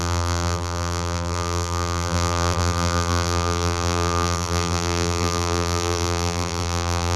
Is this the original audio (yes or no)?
no